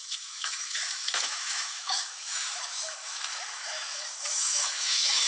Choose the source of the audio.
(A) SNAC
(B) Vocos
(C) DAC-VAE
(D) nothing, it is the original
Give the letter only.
C